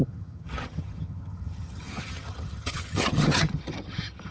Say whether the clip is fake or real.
fake